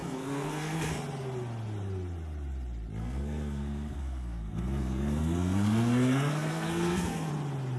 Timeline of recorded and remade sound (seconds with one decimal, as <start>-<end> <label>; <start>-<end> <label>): 0.0-1.0 remade; 1.0-3.0 recorded; 3.0-7.3 remade; 7.3-7.8 recorded